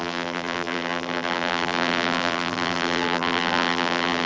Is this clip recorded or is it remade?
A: remade